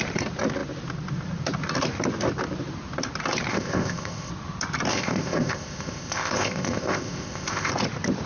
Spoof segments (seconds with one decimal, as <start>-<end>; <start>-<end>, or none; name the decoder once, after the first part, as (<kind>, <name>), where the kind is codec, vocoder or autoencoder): 3.5-4.3 (codec, ZipCodec); 4.9-7.7